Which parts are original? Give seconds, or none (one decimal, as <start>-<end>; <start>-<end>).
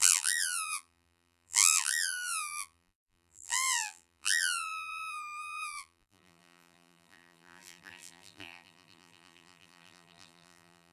none